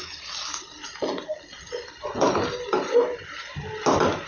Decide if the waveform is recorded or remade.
recorded